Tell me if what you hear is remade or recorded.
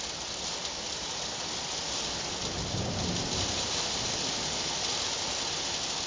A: recorded